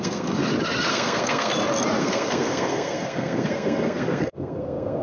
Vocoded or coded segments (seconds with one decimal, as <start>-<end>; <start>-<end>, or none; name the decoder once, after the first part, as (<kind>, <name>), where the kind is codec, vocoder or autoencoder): 0.0-0.4 (codec, SNAC); 0.9-1.5; 2.0-5.0